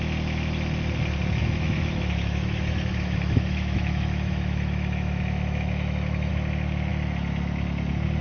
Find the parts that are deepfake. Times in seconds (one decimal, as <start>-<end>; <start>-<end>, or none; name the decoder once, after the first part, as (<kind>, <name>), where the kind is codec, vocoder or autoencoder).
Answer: 1.4-6.3 (autoencoder, DAC-VAE)